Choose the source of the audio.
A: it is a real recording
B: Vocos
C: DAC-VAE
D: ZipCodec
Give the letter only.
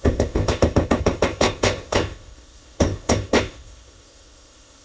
D